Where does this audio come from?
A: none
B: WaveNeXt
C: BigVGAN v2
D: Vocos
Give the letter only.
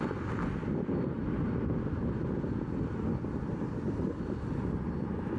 A